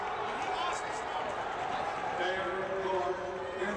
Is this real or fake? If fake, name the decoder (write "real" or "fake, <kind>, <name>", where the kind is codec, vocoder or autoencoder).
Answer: real